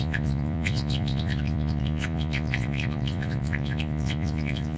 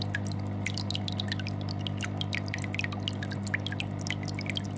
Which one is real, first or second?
second